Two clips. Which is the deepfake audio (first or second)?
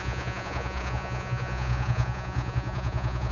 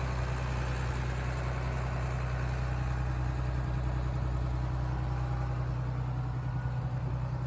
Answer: first